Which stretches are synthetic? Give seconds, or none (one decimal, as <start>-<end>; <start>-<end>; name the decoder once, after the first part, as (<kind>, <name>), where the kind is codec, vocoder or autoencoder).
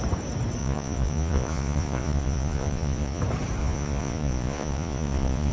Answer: 0.6-3.2 (vocoder, Vocos); 3.6-5.5